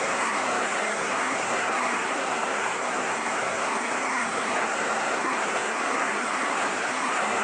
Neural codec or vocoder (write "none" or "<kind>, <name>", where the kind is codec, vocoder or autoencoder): codec, SNAC